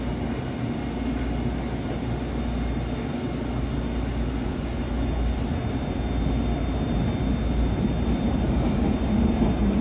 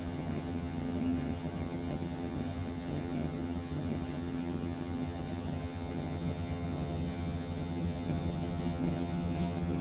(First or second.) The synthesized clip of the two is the second